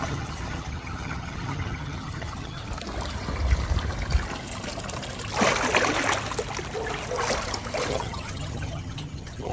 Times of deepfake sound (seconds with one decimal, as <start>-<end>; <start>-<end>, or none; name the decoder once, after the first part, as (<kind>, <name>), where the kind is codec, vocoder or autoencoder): 0.0-2.6 (vocoder, HiFi-GAN); 7.9-9.5